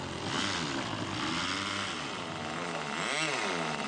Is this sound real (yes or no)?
yes